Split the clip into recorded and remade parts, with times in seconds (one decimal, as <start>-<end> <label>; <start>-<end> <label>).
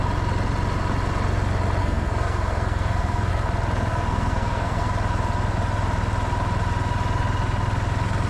0.0-1.8 recorded; 1.8-3.3 remade; 3.3-3.9 recorded; 3.9-4.9 remade; 4.9-8.3 recorded